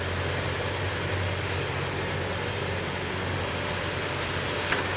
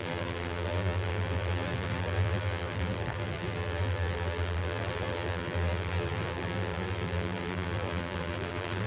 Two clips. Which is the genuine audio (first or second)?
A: first